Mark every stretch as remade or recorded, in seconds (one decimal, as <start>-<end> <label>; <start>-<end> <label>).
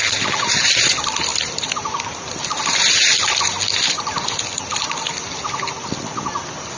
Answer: 0.0-6.8 recorded